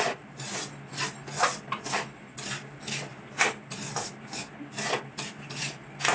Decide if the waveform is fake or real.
real